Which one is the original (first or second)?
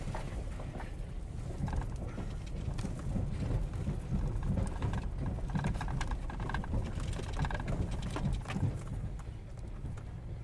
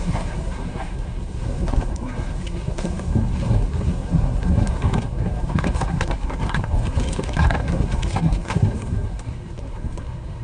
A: first